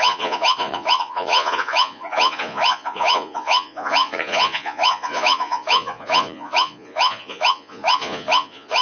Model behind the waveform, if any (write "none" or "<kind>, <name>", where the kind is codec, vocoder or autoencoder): vocoder, Vocos